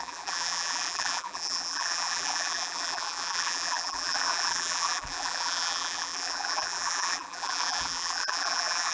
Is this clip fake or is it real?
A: fake